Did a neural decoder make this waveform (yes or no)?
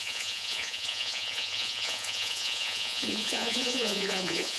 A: yes